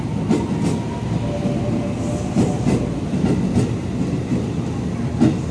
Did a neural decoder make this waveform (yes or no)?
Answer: no